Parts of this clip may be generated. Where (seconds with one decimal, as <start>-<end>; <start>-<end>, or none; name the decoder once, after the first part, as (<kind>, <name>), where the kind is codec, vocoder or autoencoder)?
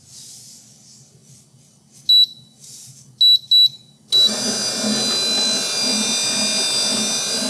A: none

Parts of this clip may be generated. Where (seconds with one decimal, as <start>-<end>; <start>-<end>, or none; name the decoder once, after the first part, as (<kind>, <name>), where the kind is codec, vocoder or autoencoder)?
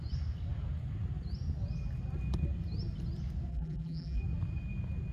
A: 3.5-4.2 (vocoder, BigVGAN v2)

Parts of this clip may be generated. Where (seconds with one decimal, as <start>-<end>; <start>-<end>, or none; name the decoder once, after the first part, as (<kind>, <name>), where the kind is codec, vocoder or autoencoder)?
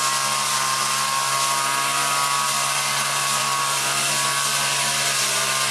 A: 3.4-4.1 (vocoder, BigVGAN v2)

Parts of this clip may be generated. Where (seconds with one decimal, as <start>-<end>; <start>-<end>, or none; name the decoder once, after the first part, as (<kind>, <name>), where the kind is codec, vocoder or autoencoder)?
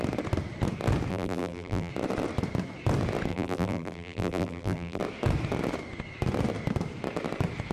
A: 1.1-1.9 (vocoder, BigVGAN v2); 3.3-5.0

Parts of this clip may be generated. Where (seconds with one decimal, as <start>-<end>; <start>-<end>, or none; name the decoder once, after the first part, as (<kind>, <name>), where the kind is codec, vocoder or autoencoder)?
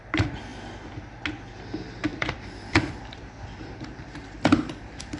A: 2.1-5.2 (vocoder, BigVGAN v2)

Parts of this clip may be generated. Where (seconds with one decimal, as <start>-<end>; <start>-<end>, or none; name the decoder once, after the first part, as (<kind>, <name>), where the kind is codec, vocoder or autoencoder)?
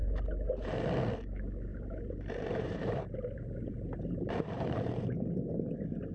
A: 1.7-5.4 (vocoder, BigVGAN v2)